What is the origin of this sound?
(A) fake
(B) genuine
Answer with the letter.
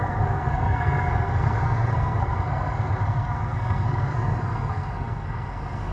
A